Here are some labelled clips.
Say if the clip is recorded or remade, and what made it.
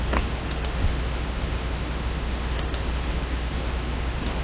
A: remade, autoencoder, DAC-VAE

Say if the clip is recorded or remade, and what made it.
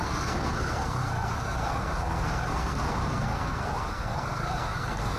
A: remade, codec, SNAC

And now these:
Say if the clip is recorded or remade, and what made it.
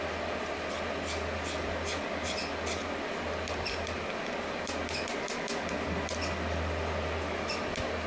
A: recorded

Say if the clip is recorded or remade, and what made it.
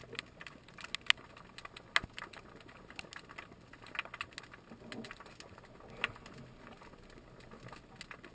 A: recorded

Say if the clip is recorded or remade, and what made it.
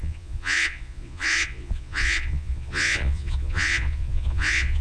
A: remade, vocoder, Vocos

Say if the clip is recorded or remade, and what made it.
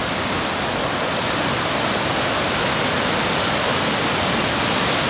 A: remade, vocoder, BigVGAN v2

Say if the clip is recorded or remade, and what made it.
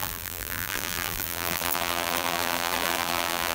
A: remade, vocoder, BigVGAN v2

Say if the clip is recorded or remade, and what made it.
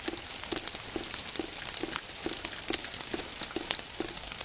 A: recorded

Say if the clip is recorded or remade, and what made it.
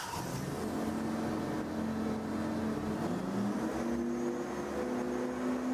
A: recorded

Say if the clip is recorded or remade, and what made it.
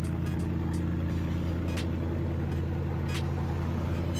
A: recorded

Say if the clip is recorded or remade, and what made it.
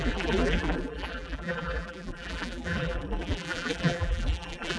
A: remade, vocoder, BigVGAN v2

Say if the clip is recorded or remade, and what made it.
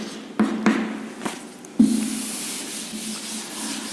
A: recorded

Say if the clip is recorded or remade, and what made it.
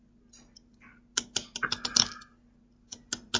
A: recorded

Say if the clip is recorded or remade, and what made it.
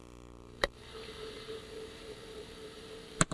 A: remade, vocoder, BigVGAN v2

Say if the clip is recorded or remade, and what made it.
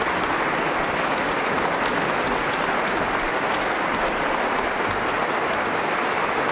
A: recorded